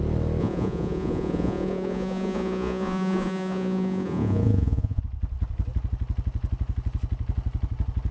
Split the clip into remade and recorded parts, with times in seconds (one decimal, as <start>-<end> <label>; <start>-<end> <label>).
0.0-0.4 recorded; 0.4-5.0 remade; 5.0-8.1 recorded